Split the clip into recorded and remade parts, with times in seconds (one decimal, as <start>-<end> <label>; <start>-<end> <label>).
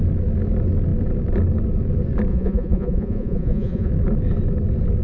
0.0-2.3 recorded; 2.3-3.9 remade; 3.9-5.0 recorded